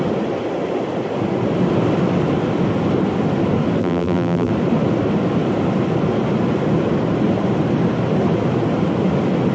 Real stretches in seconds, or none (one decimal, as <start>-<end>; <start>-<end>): 0.0-3.8; 4.5-9.5

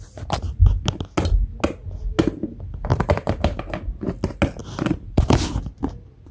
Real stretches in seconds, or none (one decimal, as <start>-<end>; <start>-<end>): 0.0-2.9; 3.9-4.6; 5.2-6.3

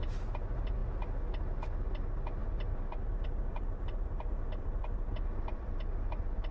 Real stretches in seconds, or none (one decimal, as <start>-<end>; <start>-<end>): 0.0-2.4

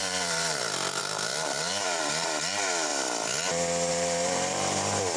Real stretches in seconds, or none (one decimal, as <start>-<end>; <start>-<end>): 2.9-3.9

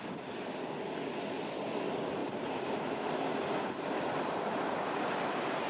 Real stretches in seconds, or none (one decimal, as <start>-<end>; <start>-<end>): 0.0-5.7

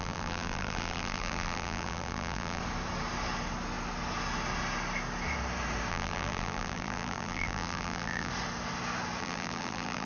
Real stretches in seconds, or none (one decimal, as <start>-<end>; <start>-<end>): 2.6-5.9; 8.3-9.2

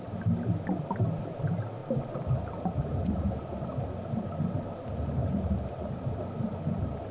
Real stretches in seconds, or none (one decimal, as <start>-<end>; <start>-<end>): 0.0-1.8; 3.3-5.2; 6.2-7.1